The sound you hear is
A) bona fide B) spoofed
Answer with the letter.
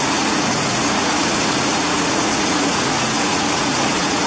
B